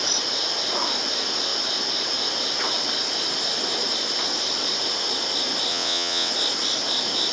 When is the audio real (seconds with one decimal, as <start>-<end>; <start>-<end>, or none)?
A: 0.0-5.7; 6.3-7.3

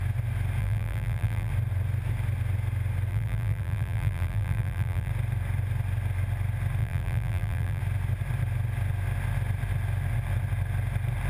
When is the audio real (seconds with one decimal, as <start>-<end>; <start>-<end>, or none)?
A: 0.0-0.6; 1.5-3.1; 5.1-6.8; 7.8-11.3

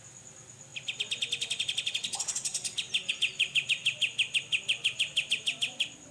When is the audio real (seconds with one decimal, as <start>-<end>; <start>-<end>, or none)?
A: 0.0-6.1

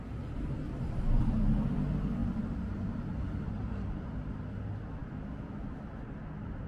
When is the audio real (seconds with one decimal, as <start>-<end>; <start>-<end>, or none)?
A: 0.0-2.2; 3.7-6.7

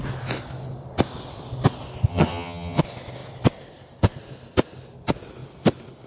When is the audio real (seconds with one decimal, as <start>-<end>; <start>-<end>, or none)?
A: 0.0-2.1; 2.8-6.1

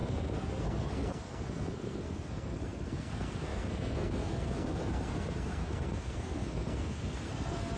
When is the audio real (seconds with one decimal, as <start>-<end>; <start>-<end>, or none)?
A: none